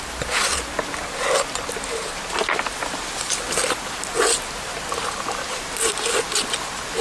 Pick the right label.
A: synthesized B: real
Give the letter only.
B